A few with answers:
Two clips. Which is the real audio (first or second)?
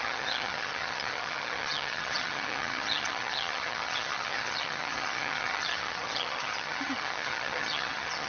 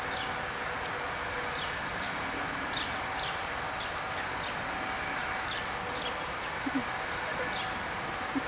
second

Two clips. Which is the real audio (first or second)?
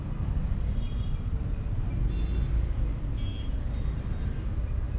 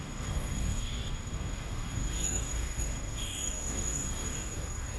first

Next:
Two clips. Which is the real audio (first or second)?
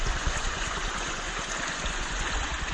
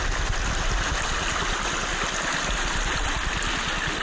second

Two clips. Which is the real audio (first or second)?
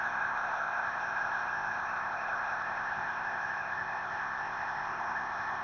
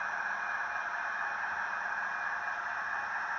second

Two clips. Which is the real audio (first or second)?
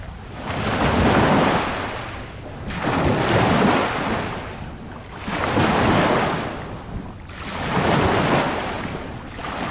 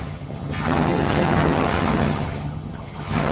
first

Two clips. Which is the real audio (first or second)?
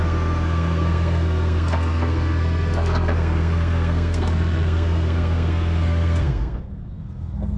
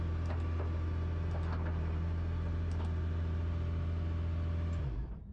second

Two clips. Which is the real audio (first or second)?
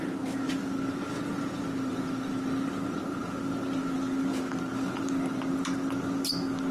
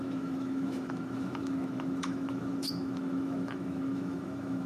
first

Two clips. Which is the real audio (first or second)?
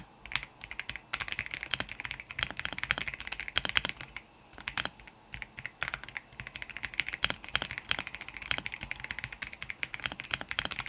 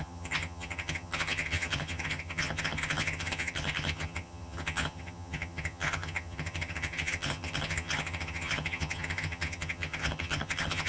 first